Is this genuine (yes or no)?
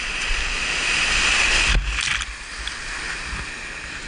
yes